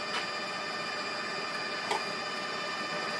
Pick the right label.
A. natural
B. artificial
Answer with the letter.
A